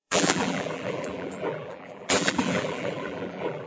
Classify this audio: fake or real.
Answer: fake